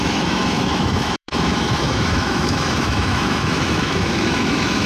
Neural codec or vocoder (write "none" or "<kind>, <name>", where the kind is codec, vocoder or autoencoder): autoencoder, DAC-VAE